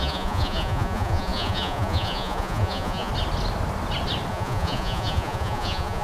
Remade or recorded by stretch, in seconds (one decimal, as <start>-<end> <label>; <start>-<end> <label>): 0.0-3.1 remade; 3.1-4.3 recorded; 4.3-6.0 remade

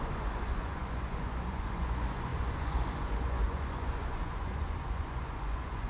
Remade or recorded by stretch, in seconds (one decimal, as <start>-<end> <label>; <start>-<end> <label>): 0.0-5.9 remade

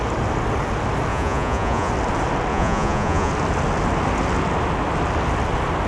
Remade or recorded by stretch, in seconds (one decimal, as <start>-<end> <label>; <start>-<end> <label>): 0.0-1.1 recorded; 1.1-1.9 remade; 1.9-2.5 recorded; 2.5-3.3 remade; 3.3-5.9 recorded

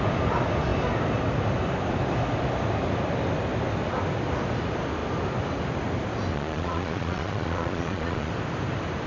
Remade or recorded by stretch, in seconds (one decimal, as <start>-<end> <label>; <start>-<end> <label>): 0.0-6.3 recorded; 6.3-8.3 remade; 8.3-9.1 recorded

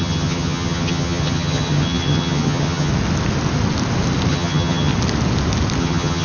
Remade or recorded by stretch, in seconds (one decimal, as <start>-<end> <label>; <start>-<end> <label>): 0.0-2.9 remade; 2.9-4.3 recorded; 4.3-4.9 remade; 4.9-5.8 recorded; 5.8-6.2 remade